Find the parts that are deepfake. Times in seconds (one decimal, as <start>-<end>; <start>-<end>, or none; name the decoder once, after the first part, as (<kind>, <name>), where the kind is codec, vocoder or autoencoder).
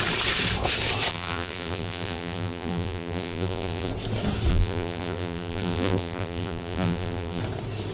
1.1-3.9 (vocoder, BigVGAN v2); 4.5-7.4